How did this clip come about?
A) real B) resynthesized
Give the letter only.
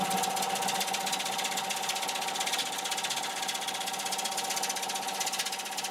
A